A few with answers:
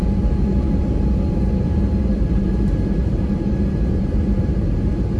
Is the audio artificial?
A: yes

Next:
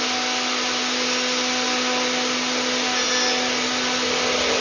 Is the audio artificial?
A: no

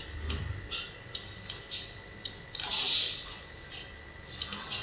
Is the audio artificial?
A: no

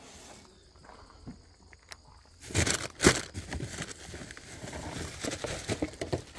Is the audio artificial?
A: no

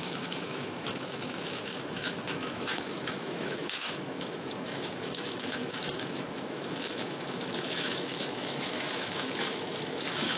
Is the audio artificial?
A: yes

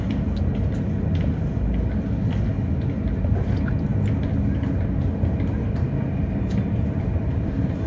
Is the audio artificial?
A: no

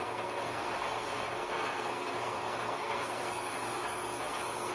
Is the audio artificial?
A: yes